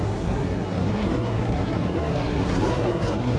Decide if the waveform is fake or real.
fake